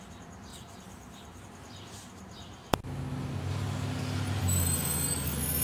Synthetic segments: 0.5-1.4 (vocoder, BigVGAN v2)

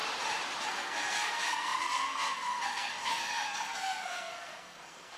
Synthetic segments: 0.6-5.2 (codec, SNAC)

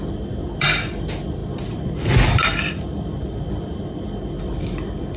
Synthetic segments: none

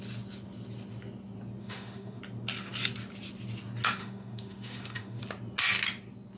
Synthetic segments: 1.6-2.2 (autoencoder, DAC-VAE); 4.0-5.2

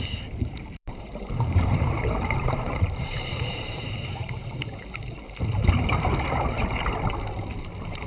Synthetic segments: 0.8-4.9 (vocoder, BigVGAN v2)

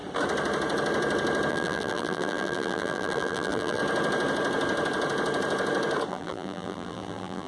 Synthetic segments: 1.5-3.8 (vocoder, BigVGAN v2); 6.1-7.5

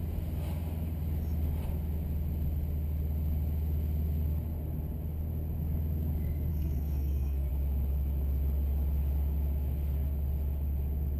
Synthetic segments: 6.5-7.5 (codec, SNAC)